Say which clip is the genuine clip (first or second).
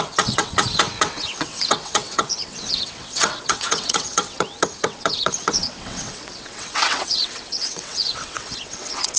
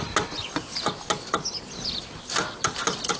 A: second